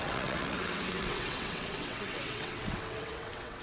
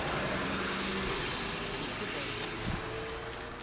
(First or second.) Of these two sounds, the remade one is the first